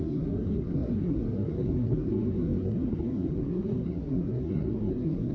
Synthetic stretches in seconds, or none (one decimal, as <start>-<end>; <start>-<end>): 0.0-5.3